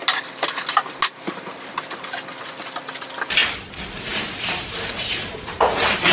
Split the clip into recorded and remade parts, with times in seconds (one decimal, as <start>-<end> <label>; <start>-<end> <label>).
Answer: 0.0-6.1 recorded

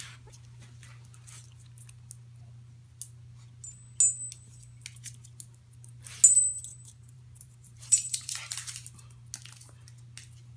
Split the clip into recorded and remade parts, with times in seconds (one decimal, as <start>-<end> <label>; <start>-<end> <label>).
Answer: 0.0-6.7 recorded; 6.7-8.3 remade; 8.3-10.6 recorded

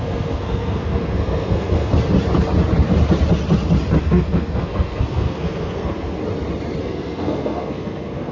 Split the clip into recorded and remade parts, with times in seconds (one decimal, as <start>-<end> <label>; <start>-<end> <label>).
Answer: 0.0-1.9 remade; 1.9-4.0 recorded; 4.0-6.2 remade; 6.2-6.8 recorded; 6.8-8.3 remade

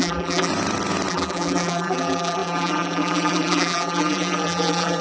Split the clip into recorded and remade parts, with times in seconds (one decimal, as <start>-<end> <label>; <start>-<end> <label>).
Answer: 0.0-0.5 remade; 0.5-1.1 recorded; 1.1-5.0 remade

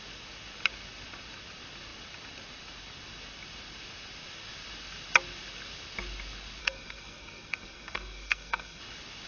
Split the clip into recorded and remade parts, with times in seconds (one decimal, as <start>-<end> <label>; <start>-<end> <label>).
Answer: 0.0-6.6 recorded; 6.6-8.8 remade; 8.8-9.3 recorded